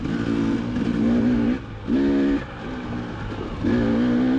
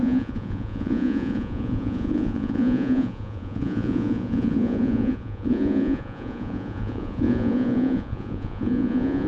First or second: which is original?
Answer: first